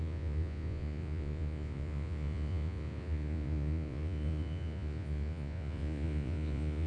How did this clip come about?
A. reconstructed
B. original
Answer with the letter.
A